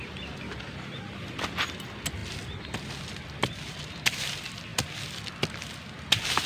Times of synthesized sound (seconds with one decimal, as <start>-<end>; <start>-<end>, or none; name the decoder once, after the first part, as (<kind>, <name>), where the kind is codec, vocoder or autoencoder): none